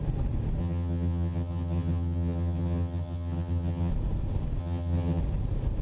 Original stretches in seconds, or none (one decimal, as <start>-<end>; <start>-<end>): 0.0-0.6; 3.9-4.6; 5.2-5.8